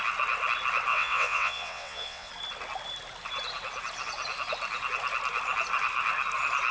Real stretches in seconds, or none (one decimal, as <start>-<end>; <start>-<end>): 0.0-0.9; 2.3-6.7